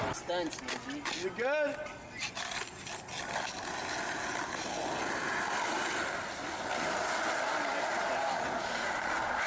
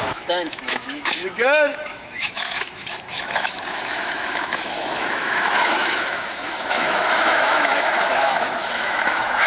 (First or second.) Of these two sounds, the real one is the first